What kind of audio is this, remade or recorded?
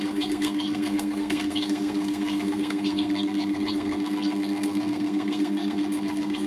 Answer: remade